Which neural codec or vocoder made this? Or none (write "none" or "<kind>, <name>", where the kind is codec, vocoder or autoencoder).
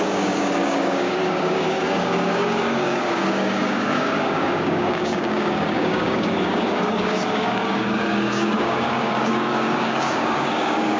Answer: codec, DAC